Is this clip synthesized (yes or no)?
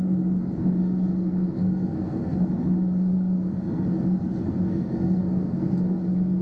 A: yes